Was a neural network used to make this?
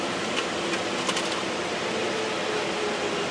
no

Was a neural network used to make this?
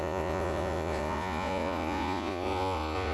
yes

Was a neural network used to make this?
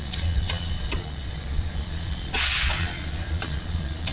yes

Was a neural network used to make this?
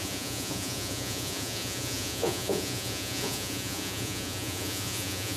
yes